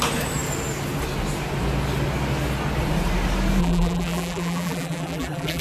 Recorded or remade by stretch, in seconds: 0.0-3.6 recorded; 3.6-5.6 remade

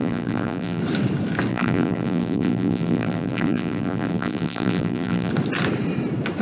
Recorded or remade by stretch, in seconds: 0.0-0.8 remade; 0.8-1.5 recorded; 1.5-5.3 remade; 5.3-6.4 recorded